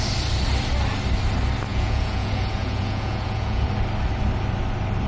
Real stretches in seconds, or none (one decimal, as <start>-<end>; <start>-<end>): 0.0-1.7; 3.7-5.1